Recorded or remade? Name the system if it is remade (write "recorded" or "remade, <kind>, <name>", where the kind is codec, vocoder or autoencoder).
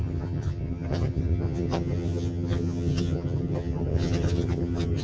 remade, vocoder, HiFi-GAN